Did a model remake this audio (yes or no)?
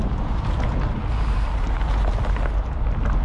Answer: no